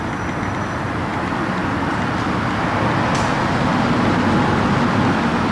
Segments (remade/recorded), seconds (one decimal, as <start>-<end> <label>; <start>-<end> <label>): 0.0-5.5 recorded